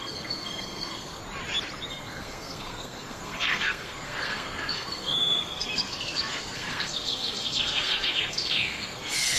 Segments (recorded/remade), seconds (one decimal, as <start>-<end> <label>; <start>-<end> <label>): 0.0-1.2 remade; 1.2-1.9 recorded; 1.9-9.4 remade